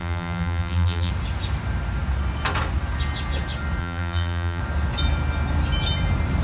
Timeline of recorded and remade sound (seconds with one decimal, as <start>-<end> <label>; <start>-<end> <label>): 0.0-1.1 remade; 1.1-3.8 recorded; 3.8-4.6 remade; 4.6-6.4 recorded